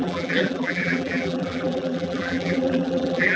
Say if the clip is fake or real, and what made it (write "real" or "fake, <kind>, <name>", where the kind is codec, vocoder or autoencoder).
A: fake, vocoder, BigVGAN v2